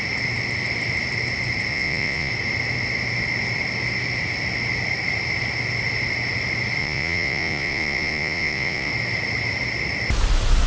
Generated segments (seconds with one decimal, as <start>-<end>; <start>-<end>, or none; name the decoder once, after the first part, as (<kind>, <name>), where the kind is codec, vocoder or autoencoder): 1.7-2.3 (vocoder, Vocos); 6.8-8.9

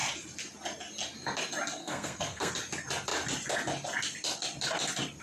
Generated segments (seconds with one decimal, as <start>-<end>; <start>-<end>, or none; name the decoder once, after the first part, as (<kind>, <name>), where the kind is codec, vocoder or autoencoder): 1.8-2.5 (codec, SNAC)

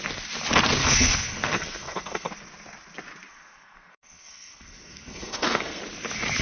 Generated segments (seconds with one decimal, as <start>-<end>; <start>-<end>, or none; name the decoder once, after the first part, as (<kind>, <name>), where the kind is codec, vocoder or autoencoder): 0.8-2.3 (codec, SNAC); 3.3-5.8

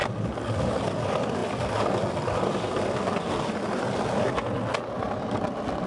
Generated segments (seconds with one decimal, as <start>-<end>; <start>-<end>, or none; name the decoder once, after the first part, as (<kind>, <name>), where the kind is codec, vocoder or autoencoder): none

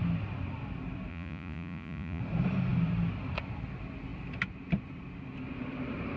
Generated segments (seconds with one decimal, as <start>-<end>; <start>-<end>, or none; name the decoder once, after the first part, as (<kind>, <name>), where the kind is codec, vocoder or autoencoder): 1.1-2.2 (vocoder, Vocos)

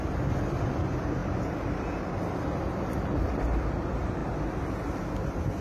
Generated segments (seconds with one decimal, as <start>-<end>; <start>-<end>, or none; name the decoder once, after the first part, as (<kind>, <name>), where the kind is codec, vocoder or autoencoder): none

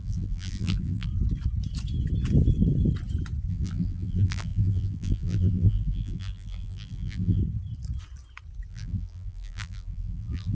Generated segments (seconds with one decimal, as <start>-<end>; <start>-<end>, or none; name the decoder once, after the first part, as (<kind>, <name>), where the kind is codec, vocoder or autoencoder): 0.0-1.1 (vocoder, BigVGAN v2); 3.5-7.4; 8.7-10.5